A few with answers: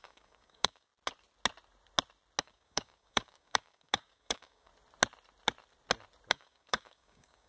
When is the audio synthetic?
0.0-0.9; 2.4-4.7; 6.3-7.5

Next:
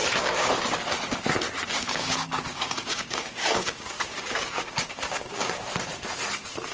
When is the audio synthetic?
0.0-0.5; 1.7-5.7

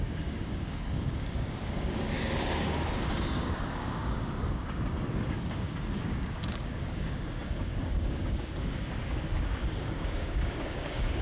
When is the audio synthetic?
0.0-11.2

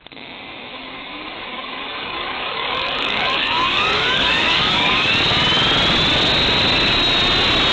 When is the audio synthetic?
0.7-5.1

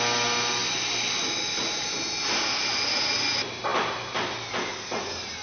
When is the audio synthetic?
none